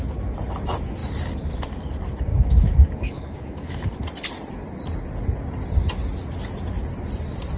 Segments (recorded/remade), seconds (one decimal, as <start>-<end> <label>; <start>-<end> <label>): 0.0-2.3 recorded; 2.3-3.9 remade; 3.9-7.6 recorded